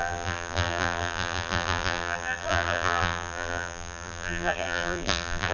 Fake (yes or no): yes